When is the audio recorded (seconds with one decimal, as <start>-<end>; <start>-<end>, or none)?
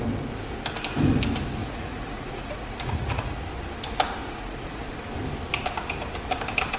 0.0-1.6; 3.4-4.2; 4.8-6.8